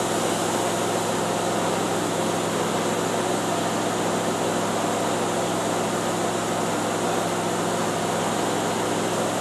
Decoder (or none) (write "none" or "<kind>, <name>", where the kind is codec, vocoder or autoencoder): none